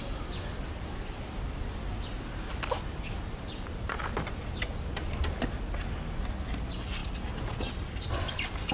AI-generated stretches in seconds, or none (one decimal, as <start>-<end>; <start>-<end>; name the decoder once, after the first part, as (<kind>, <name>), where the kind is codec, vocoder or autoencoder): none